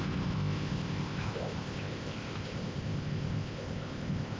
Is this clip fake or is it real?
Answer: fake